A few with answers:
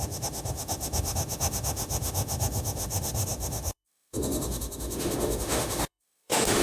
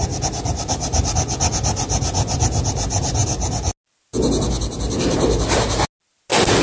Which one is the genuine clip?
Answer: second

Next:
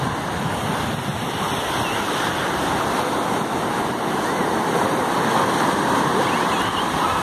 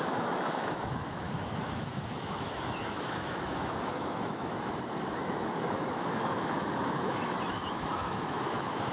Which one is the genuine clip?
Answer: first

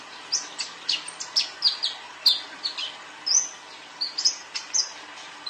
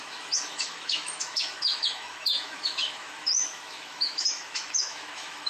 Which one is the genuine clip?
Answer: first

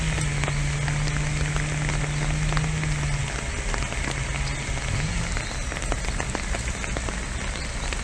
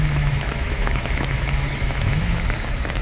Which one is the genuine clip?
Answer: first